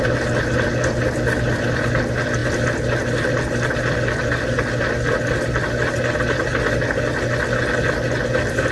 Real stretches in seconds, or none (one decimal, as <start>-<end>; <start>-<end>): 0.0-8.7